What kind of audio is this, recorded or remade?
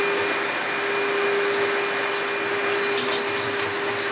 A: recorded